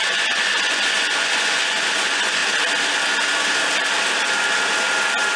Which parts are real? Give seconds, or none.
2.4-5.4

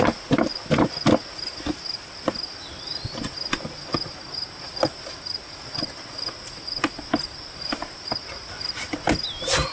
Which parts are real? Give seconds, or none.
0.0-9.7

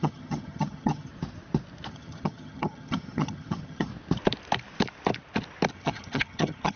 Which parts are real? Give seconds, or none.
1.1-1.9; 3.9-5.7

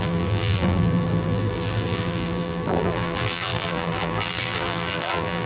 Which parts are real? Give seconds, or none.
none

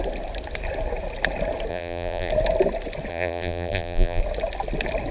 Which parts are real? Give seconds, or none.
0.0-1.7; 2.3-3.1; 4.2-5.1